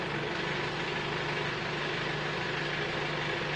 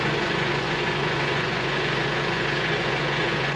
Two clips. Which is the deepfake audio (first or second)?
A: second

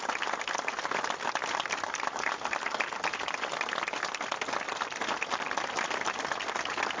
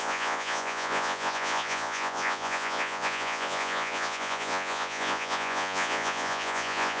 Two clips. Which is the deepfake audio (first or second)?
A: second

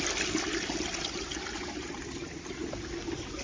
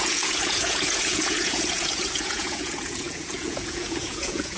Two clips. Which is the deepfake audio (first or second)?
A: second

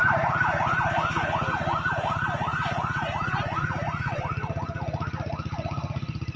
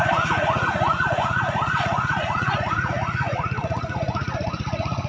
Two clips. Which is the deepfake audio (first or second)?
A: second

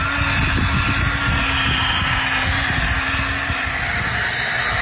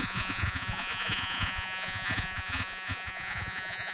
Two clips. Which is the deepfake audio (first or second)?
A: second